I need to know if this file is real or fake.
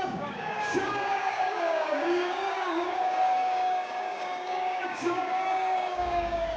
fake